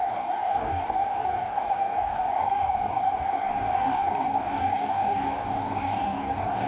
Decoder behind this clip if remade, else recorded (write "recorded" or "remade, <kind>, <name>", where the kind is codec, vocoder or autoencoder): remade, codec, DAC